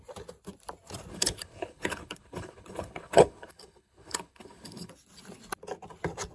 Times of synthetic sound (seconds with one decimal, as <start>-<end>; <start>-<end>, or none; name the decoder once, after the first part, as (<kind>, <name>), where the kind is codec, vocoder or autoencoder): 1.1-4.9 (codec, HILCodec)